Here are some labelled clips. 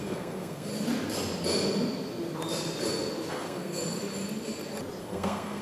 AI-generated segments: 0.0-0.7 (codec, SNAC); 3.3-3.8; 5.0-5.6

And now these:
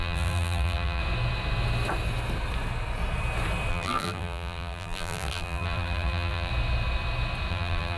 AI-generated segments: 0.0-1.0 (vocoder, BigVGAN v2); 3.7-6.5; 7.5-8.0